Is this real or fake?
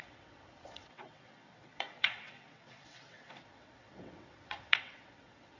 fake